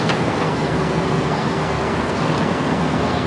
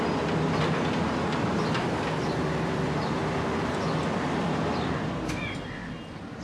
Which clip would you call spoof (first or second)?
first